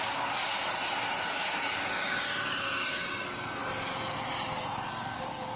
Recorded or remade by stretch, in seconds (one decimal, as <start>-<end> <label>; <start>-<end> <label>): 0.0-0.4 remade; 0.4-1.3 recorded; 1.3-3.6 remade; 3.6-4.9 recorded; 4.9-5.6 remade